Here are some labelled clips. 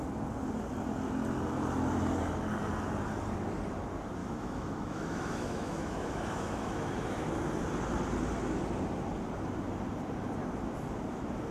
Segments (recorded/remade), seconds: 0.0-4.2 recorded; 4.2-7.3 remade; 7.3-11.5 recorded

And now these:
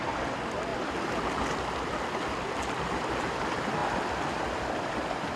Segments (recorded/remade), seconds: 0.0-5.4 recorded

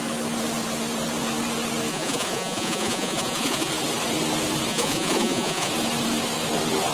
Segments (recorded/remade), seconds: 0.0-1.9 recorded; 1.9-3.7 remade; 3.7-4.7 recorded; 4.7-5.7 remade; 5.7-6.9 recorded

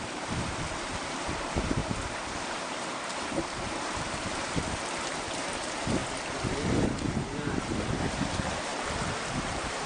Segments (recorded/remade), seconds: 0.0-6.0 remade; 6.0-6.8 recorded; 6.8-8.7 remade; 8.7-9.5 recorded; 9.5-9.9 remade

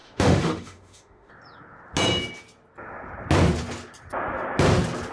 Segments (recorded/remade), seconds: 0.0-1.3 remade; 1.3-5.1 recorded